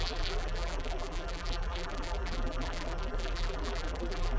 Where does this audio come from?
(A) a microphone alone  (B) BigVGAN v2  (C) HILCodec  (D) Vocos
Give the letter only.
B